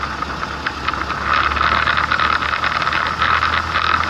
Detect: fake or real real